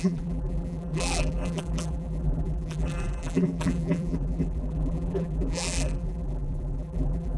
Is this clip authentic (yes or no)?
no